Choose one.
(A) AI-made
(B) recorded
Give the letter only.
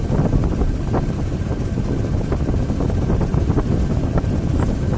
B